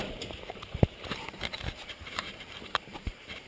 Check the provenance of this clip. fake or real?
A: fake